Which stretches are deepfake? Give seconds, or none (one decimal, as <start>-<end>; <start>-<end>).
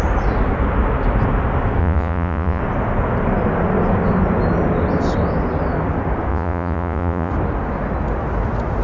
1.8-2.6; 6.3-7.3